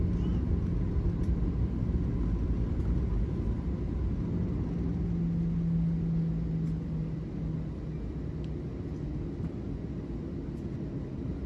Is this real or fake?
real